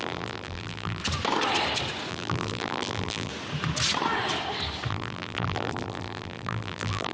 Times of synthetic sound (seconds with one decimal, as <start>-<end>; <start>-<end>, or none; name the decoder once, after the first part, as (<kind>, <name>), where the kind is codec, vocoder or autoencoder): 0.0-1.0 (vocoder, BigVGAN v2); 2.1-3.3; 4.9-7.1